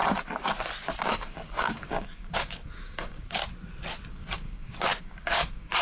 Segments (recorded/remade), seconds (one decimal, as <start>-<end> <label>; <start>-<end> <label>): 0.0-1.0 recorded; 1.0-3.4 remade; 3.4-4.1 recorded; 4.1-5.8 remade